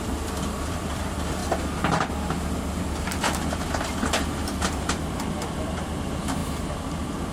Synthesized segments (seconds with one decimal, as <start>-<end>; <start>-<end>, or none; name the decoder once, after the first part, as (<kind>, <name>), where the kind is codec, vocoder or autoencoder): 0.0-1.4 (vocoder, BigVGAN v2); 2.8-7.3